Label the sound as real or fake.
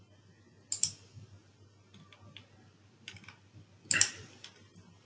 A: real